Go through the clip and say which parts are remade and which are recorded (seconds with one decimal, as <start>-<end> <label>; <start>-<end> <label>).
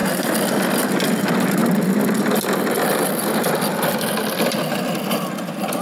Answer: 0.0-5.8 recorded